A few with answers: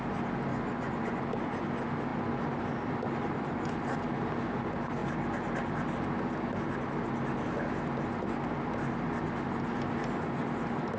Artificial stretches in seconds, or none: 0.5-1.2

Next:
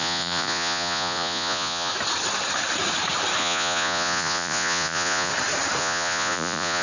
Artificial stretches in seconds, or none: 0.0-1.9; 3.4-5.3; 5.8-6.8

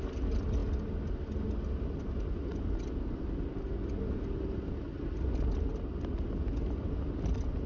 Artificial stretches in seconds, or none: none

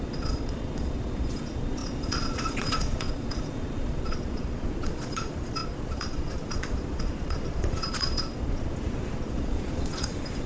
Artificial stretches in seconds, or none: 0.0-10.5

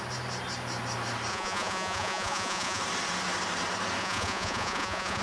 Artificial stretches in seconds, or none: 1.3-2.8; 4.0-5.2

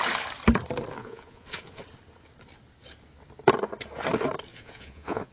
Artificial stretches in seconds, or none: 1.0-1.8; 4.5-5.3